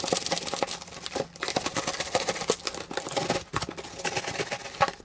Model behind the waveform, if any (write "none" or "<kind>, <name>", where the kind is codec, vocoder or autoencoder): none